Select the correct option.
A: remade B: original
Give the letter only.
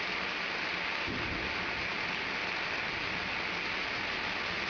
B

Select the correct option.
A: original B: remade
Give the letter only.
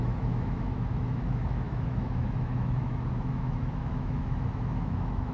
B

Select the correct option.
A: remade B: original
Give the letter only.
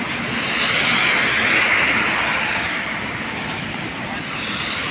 B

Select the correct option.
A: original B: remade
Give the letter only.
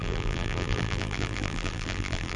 B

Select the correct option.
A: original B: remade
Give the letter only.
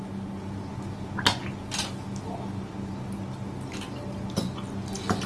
A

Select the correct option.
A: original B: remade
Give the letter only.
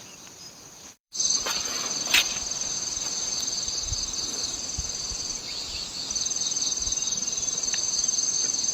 B